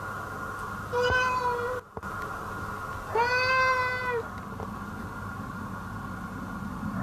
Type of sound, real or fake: real